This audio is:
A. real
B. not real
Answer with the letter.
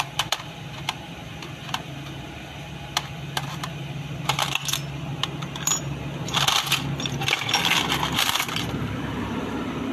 A